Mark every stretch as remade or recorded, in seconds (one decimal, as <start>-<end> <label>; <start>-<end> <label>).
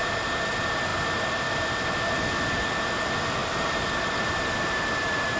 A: 0.0-5.4 recorded